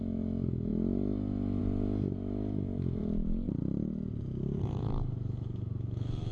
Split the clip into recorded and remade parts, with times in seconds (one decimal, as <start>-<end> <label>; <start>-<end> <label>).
0.0-3.0 remade; 3.0-4.8 recorded; 4.8-6.3 remade